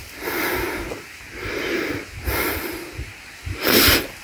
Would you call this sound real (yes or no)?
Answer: yes